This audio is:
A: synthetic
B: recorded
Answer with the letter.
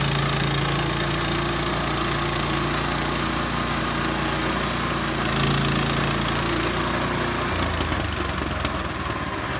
B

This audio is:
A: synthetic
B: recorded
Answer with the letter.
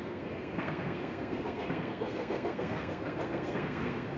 A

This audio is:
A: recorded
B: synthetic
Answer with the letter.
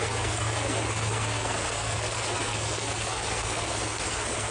B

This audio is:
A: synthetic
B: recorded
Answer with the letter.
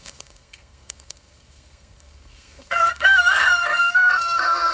A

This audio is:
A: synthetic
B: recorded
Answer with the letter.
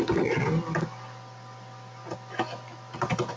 B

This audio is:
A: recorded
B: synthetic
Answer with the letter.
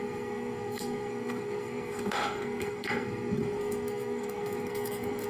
B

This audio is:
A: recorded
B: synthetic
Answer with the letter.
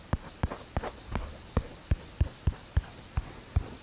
A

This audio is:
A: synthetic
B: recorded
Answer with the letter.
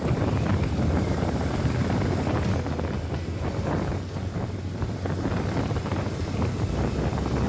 B